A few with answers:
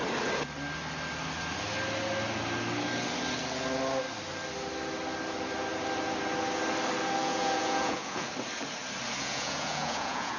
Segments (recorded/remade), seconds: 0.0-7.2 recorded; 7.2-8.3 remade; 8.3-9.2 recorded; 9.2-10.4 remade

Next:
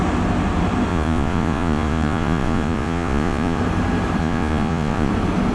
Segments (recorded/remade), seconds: 0.0-0.9 recorded; 0.9-3.6 remade; 3.6-4.2 recorded; 4.2-5.1 remade; 5.1-5.5 recorded

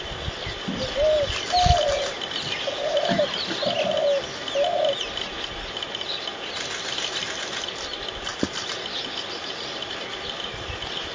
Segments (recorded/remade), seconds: 0.0-11.1 recorded

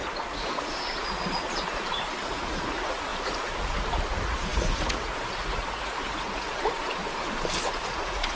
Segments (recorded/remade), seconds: 0.0-7.0 remade; 7.0-7.6 recorded; 7.6-8.4 remade

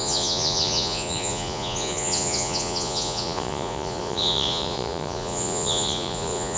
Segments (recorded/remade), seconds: 0.0-6.6 remade

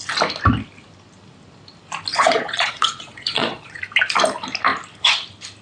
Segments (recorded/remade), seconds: 0.0-2.1 recorded; 2.1-3.8 remade; 3.8-5.6 recorded